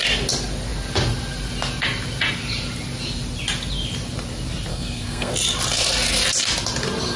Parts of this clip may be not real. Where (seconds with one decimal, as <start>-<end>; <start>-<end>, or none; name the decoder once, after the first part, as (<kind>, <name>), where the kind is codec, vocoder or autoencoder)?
4.7-5.3 (codec, SNAC)